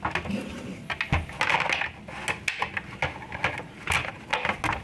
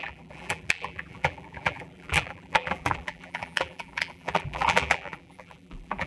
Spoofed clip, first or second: second